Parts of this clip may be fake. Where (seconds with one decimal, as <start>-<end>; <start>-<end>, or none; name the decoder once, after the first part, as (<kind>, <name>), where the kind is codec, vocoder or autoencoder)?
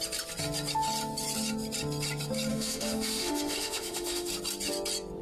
2.5-4.3 (autoencoder, DAC-VAE)